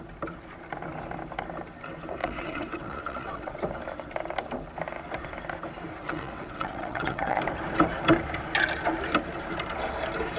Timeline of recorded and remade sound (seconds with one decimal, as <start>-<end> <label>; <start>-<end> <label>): 0.0-2.2 recorded; 2.2-3.6 remade; 3.6-6.0 recorded; 6.0-7.4 remade; 7.4-10.4 recorded